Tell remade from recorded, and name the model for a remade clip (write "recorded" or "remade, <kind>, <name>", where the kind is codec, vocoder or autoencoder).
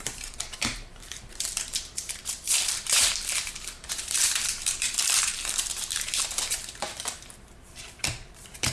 remade, vocoder, BigVGAN v2